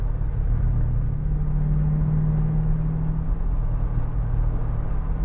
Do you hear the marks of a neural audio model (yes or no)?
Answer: no